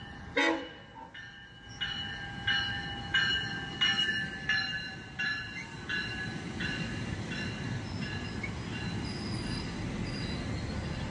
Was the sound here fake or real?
real